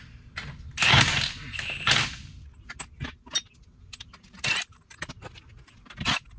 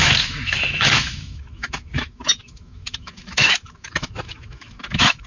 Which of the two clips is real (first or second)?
first